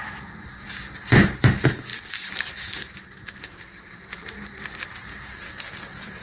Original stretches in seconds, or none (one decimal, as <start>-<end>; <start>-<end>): none